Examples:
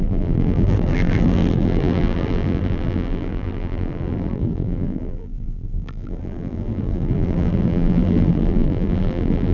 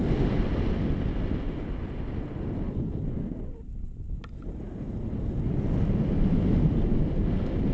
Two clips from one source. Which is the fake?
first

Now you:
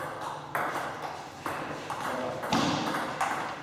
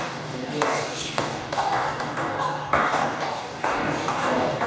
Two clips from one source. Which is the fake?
second